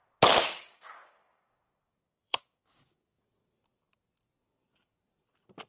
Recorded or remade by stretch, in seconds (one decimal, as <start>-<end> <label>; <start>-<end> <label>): 0.0-0.4 recorded; 0.4-1.5 remade; 1.5-2.0 recorded; 2.0-3.2 remade; 3.2-5.7 recorded

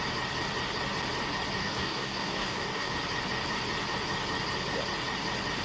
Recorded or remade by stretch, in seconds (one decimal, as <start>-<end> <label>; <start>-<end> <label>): 0.0-1.6 recorded; 1.6-2.9 remade; 2.9-5.6 recorded

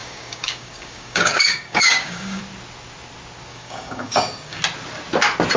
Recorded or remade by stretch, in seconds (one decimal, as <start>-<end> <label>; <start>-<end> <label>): 0.0-2.4 remade; 2.4-3.5 recorded; 3.5-4.6 remade; 4.6-5.6 recorded

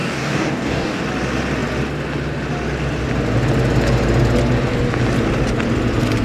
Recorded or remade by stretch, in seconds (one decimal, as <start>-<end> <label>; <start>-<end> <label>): 0.0-1.0 remade; 1.0-6.2 recorded

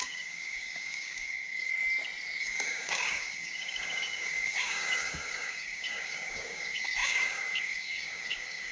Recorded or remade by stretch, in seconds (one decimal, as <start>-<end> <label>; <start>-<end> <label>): 0.0-1.7 remade; 1.7-2.4 recorded; 2.4-8.7 remade

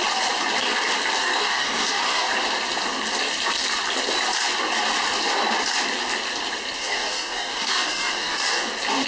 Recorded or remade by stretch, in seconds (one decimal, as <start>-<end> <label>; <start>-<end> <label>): 0.0-1.2 recorded; 1.2-2.3 remade; 2.3-6.8 recorded; 6.8-8.7 remade; 8.7-9.1 recorded

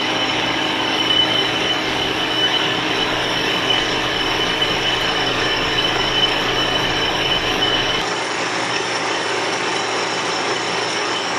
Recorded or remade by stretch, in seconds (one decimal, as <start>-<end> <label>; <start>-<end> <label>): 0.0-9.7 remade; 9.7-10.3 recorded; 10.3-11.4 remade